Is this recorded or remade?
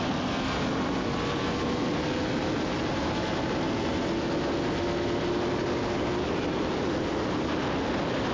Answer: recorded